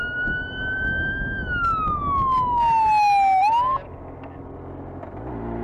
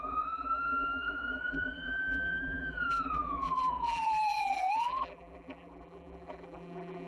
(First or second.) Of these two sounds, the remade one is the second